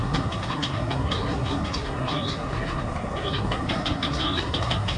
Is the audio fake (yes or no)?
yes